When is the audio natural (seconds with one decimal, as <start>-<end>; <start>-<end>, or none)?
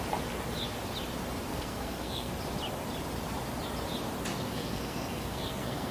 0.0-1.5; 2.3-4.3